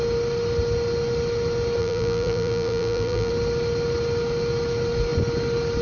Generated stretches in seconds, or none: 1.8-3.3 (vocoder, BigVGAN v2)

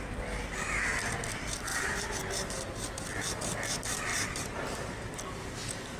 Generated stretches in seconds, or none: 1.7-2.2 (vocoder, BigVGAN v2); 4.1-5.3

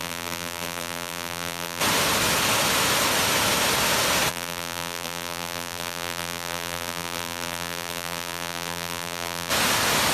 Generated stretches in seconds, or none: 0.0-1.8 (vocoder, BigVGAN v2); 4.3-9.5

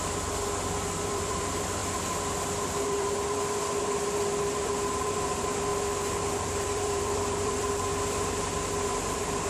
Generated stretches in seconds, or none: 0.0-1.8 (vocoder, BigVGAN v2); 2.8-5.7; 6.3-9.5